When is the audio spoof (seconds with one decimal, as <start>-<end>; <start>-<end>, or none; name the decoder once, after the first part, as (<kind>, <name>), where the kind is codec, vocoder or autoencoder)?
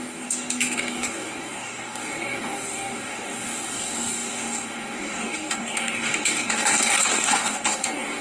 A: 0.0-8.2 (codec, DAC)